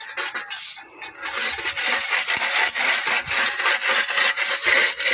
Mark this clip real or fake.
real